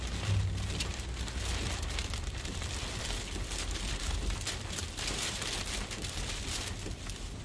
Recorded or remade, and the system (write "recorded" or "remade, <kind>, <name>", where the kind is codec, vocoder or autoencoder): remade, vocoder, BigVGAN v2